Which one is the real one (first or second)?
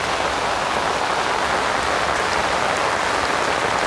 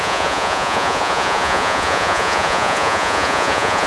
first